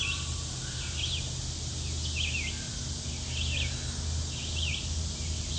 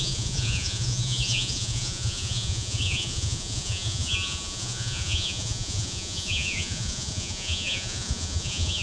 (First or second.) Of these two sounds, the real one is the first